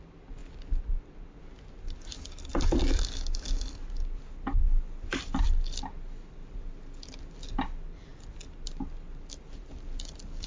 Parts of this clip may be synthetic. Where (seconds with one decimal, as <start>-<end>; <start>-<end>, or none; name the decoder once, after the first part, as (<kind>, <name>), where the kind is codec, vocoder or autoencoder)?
0.4-1.4 (vocoder, BigVGAN v2); 2.5-4.2